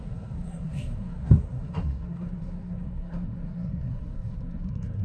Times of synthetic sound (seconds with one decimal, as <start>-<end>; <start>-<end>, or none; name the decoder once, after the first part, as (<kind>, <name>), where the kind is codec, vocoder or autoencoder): 0.0-5.0 (codec, SNAC)